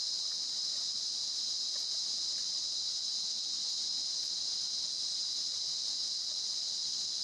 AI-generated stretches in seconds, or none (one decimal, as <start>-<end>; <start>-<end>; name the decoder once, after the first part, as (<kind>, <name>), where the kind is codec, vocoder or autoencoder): none